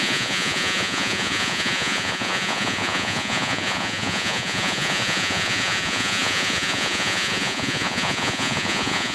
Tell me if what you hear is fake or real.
fake